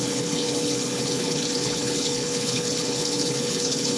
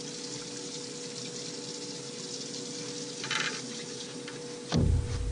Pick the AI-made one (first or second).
first